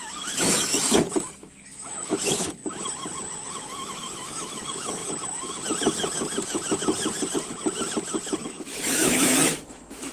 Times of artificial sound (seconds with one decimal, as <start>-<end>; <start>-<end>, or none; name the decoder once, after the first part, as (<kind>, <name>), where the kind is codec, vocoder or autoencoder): 0.0-2.6 (autoencoder, DAC-VAE); 3.5-5.0; 8.4-10.1